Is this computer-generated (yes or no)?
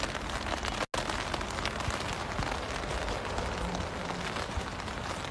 no